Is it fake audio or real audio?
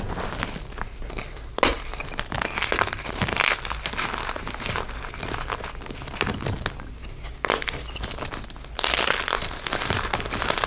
real